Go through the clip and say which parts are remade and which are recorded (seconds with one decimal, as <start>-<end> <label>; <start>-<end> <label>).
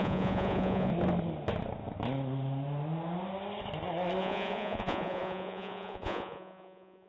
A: 0.0-0.9 remade; 0.9-4.2 recorded; 4.2-7.1 remade